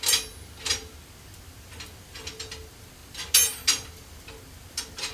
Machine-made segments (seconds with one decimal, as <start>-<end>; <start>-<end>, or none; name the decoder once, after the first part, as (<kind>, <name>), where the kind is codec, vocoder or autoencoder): none